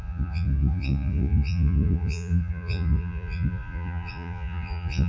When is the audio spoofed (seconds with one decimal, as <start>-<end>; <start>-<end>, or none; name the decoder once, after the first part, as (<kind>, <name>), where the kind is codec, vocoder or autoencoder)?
0.0-5.1 (vocoder, Vocos)

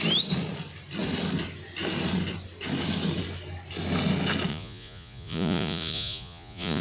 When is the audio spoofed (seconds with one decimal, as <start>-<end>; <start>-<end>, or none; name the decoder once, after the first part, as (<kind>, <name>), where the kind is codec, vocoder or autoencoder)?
4.5-6.8 (vocoder, Vocos)

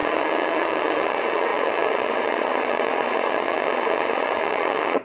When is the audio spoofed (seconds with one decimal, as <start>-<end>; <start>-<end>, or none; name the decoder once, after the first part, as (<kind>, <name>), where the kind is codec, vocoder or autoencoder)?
0.0-5.0 (vocoder, Vocos)

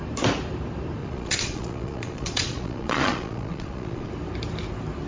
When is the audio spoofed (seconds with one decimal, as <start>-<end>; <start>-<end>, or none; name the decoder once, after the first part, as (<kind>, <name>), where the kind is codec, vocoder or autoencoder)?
1.0-4.1 (vocoder, Vocos)